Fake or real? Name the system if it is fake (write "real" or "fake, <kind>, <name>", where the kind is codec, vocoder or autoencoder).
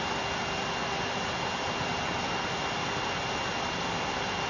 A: real